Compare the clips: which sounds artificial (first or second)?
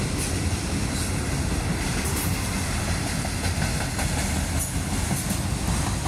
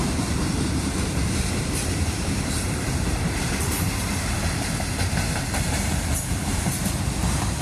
second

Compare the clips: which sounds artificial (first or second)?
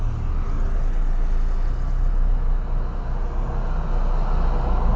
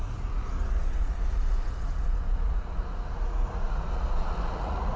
second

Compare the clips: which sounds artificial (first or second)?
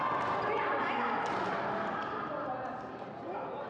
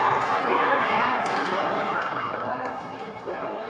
second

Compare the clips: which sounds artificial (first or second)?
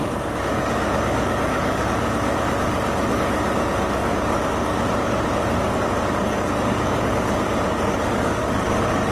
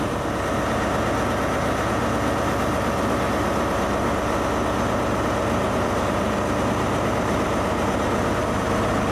first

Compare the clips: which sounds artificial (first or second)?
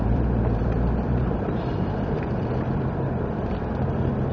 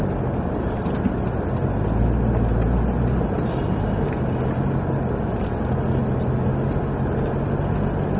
first